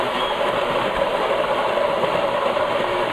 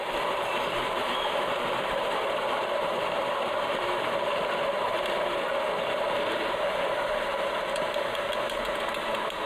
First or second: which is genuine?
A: first